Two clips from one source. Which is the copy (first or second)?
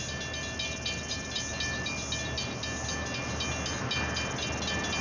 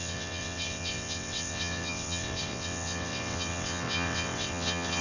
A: second